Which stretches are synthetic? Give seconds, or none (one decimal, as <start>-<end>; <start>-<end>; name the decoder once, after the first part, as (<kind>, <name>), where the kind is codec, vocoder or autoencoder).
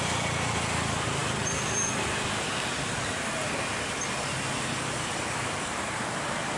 none